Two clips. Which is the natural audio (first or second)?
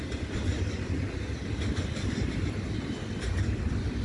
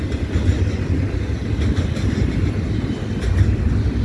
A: second